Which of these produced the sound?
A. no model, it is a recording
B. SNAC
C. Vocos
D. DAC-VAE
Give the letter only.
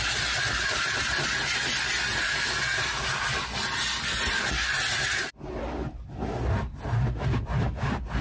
A